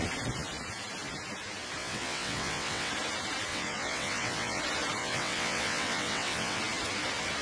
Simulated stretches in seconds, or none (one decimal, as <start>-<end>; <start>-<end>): 1.8-2.9; 3.5-4.6; 5.0-6.6